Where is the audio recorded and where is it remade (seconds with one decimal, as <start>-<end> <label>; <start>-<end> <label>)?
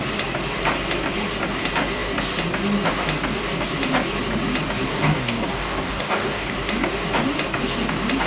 0.0-4.9 recorded; 4.9-6.5 remade; 6.5-8.3 recorded